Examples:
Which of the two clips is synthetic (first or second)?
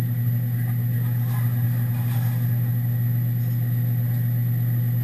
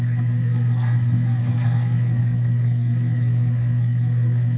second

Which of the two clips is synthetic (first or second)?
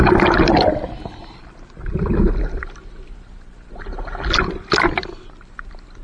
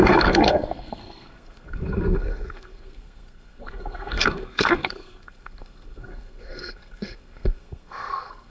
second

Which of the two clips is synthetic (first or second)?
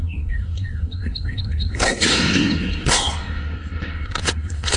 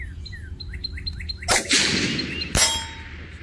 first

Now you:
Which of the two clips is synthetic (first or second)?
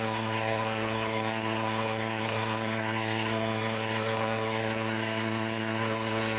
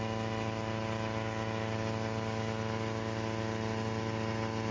first